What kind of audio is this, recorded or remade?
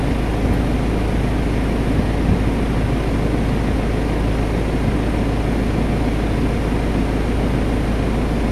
recorded